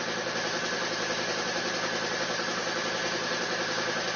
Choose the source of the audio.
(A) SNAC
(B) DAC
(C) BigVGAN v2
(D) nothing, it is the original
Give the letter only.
D